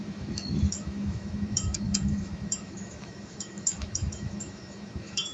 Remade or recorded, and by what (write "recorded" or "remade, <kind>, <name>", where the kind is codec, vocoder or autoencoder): remade, autoencoder, DAC-VAE